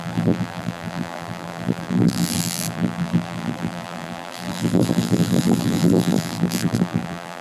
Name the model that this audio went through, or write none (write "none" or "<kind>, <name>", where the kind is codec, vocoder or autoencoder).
vocoder, BigVGAN v2